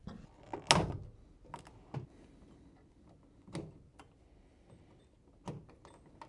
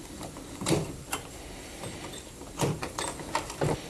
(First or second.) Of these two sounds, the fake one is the second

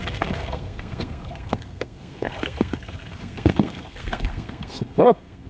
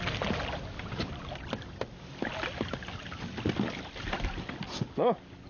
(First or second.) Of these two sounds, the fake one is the first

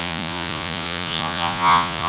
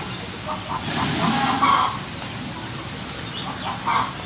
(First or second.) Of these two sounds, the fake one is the first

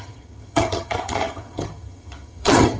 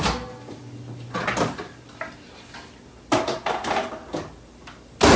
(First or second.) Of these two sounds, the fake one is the first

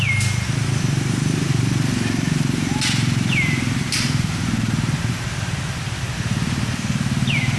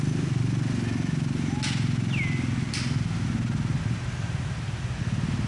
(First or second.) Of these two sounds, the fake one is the first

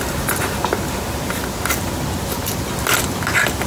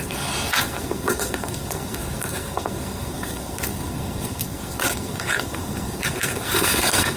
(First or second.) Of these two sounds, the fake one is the second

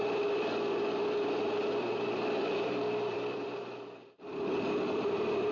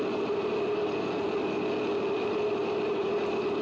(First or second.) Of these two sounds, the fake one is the first